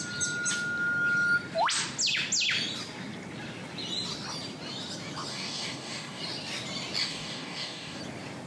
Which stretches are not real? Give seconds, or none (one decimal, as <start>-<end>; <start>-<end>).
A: 5.3-6.2; 7.0-8.0